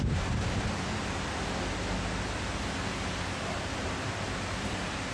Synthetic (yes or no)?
no